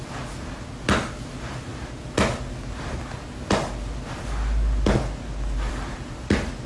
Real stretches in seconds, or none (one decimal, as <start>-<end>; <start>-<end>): 0.0-6.7